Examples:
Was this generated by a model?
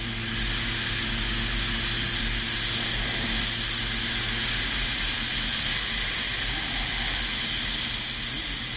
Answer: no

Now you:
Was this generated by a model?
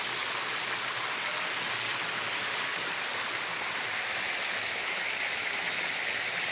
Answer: no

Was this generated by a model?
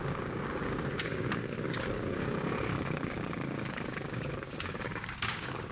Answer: yes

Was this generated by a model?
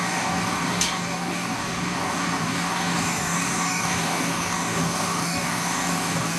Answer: yes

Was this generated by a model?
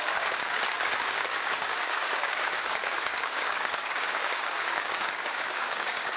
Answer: yes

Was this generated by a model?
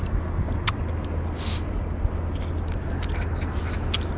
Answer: no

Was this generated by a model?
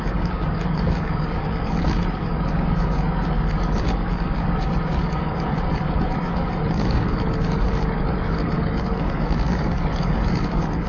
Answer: yes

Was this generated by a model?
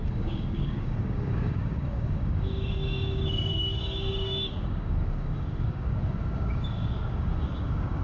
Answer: yes